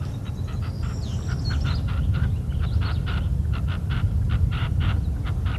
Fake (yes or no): no